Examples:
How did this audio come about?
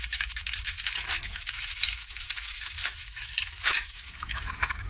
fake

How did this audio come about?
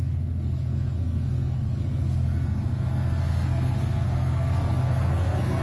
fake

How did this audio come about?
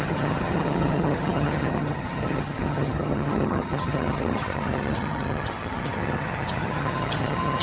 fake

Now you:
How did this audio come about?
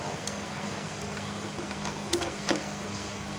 fake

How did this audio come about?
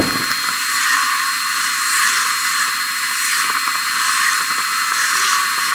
real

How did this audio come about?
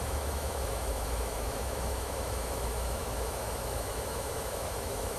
fake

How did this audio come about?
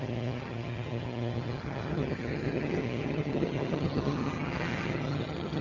fake